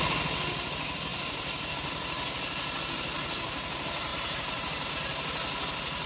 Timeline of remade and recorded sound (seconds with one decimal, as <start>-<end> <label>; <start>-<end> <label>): 0.0-4.1 recorded; 4.1-4.9 remade; 4.9-6.1 recorded